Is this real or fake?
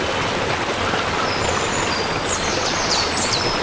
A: real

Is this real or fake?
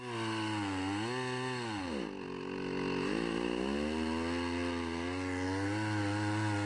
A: real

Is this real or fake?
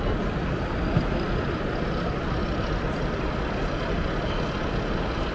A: real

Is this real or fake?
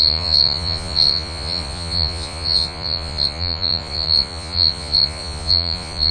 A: fake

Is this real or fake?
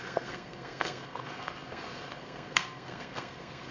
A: fake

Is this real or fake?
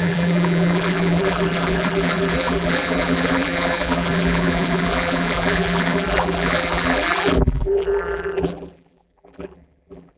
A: fake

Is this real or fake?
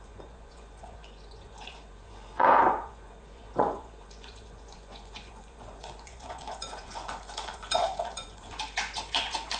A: fake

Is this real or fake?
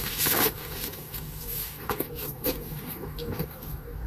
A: fake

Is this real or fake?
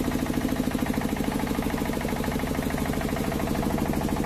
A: real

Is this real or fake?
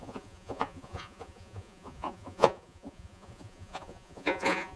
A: fake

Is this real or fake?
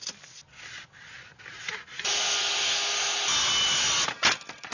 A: real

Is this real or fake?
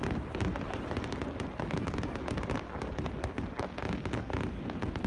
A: real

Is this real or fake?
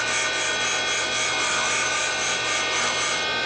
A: real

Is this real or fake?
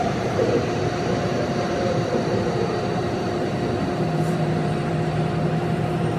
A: fake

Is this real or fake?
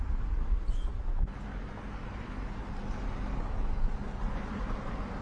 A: real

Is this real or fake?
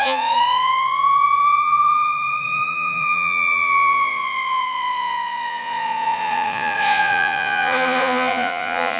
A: fake